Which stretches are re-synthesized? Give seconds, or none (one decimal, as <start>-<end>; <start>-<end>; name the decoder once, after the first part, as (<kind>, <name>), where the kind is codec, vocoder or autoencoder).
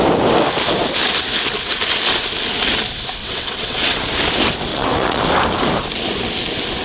3.2-4.0 (vocoder, WaveNeXt); 4.7-5.3